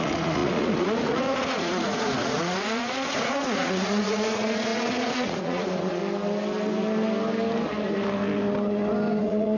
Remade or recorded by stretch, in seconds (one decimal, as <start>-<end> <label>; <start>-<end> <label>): 0.0-6.0 remade; 6.0-9.2 recorded; 9.2-9.6 remade